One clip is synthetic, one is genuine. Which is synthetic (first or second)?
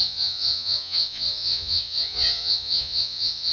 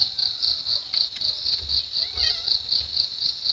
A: first